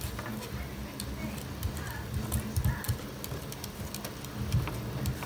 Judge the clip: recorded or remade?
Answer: recorded